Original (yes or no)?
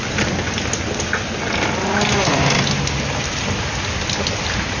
yes